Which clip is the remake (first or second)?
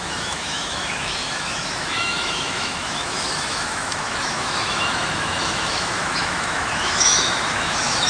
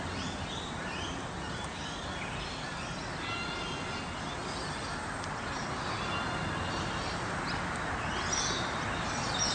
first